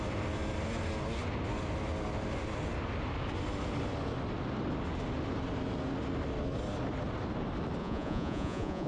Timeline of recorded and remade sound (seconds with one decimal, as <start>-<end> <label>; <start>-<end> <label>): 0.0-7.8 recorded; 7.8-8.9 remade